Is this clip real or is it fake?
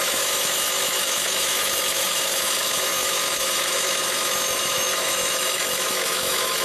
fake